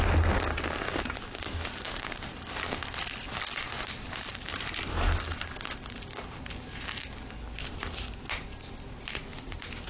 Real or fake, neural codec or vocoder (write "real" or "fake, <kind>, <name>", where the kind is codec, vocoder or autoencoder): real